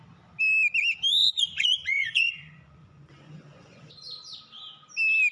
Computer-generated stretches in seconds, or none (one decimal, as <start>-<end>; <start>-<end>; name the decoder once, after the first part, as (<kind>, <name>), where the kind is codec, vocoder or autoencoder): 1.2-3.9 (vocoder, Vocos)